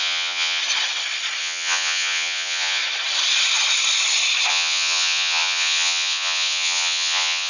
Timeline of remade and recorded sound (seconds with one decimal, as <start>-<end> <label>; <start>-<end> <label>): 0.0-0.6 remade; 0.6-1.4 recorded; 1.4-2.8 remade; 2.8-4.5 recorded; 4.5-7.5 remade